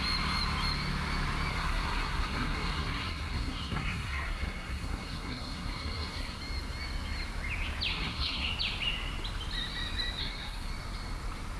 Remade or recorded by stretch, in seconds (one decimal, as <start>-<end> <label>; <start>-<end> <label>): 0.0-1.5 recorded; 1.5-6.4 remade; 6.4-7.9 recorded; 7.9-8.5 remade; 8.5-10.2 recorded; 10.2-10.7 remade; 10.7-11.6 recorded

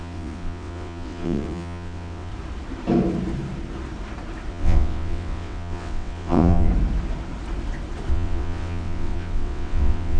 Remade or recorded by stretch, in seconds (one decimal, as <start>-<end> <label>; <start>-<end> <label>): 0.0-2.3 remade; 2.3-4.5 recorded; 4.5-6.7 remade; 6.7-8.1 recorded; 8.1-10.2 remade

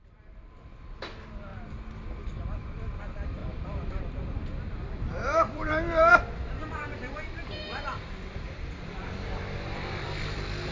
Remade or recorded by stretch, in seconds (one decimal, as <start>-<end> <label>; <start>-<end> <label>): 0.0-1.5 remade; 1.5-3.0 recorded; 3.0-10.7 remade

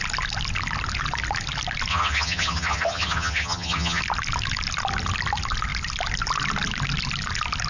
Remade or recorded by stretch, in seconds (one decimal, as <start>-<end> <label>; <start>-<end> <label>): 0.0-1.9 recorded; 1.9-4.0 remade; 4.0-7.7 recorded

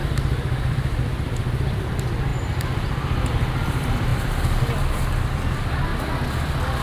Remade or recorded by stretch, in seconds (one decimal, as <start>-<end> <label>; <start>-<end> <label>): 0.0-2.3 remade; 2.3-3.3 recorded; 3.3-5.9 remade; 5.9-6.8 recorded

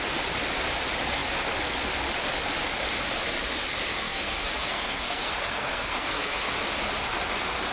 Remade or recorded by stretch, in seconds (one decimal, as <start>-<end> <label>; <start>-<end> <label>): 0.0-3.9 recorded; 3.9-6.4 remade; 6.4-7.7 recorded

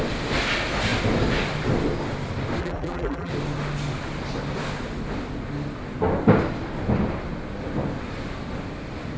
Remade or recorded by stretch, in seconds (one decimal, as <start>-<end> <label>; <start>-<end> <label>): 0.0-2.6 recorded; 2.6-3.3 remade; 3.3-9.2 recorded